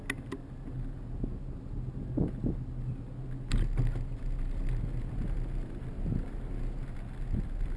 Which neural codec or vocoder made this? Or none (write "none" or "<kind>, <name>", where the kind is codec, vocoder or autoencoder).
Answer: none